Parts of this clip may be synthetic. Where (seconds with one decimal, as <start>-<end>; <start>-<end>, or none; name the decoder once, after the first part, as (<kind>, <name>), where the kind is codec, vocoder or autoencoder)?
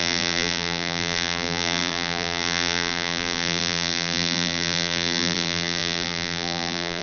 0.0-7.0 (vocoder, BigVGAN v2)